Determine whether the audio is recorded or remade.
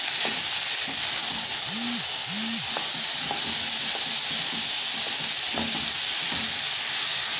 recorded